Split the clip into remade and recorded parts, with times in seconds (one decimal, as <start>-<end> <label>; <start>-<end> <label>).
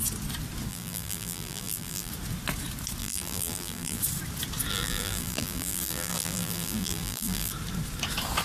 0.0-0.7 recorded; 0.7-2.1 remade; 2.1-3.0 recorded; 3.0-4.0 remade; 4.0-4.7 recorded; 4.7-7.5 remade; 7.5-8.4 recorded